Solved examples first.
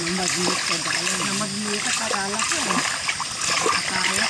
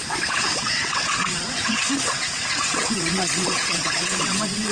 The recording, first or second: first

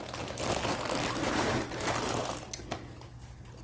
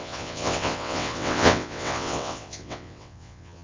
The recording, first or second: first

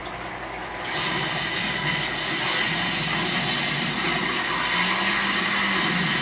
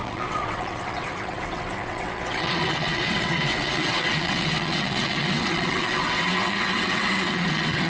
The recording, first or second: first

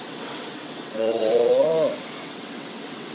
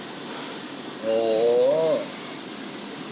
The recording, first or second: second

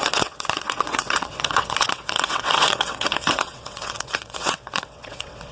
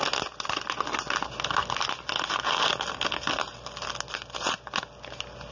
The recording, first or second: second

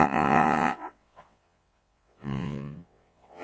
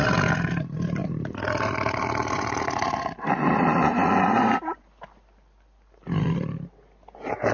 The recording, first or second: second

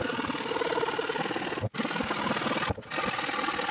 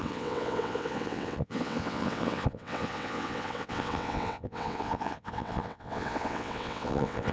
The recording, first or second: first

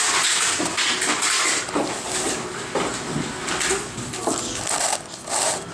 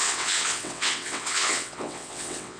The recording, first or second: first